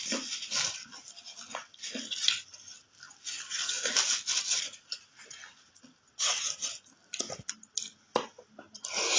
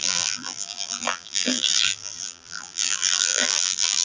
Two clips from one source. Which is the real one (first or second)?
first